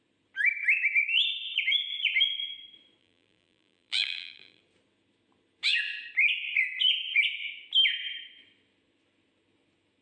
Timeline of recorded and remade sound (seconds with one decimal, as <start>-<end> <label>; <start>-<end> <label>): 0.0-3.0 recorded; 3.0-4.6 remade; 4.6-10.0 recorded